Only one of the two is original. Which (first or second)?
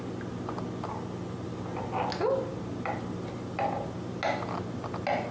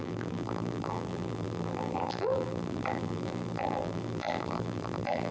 first